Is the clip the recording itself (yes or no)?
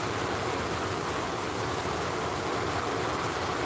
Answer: yes